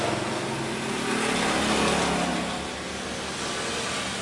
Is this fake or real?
real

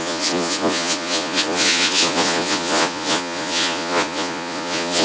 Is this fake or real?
fake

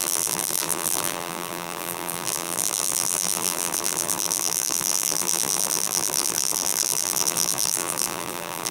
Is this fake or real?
fake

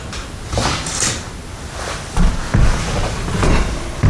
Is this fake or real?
real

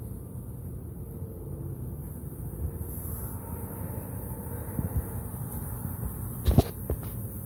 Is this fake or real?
real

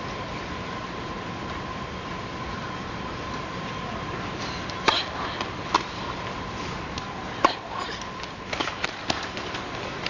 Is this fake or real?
real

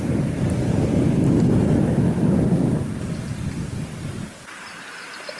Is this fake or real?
real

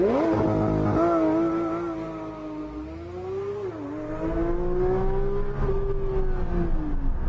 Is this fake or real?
real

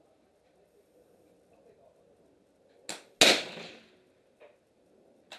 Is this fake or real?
real